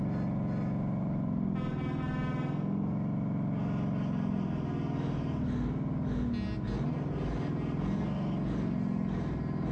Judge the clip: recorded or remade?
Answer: recorded